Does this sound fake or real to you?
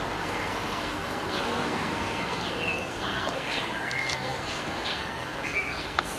fake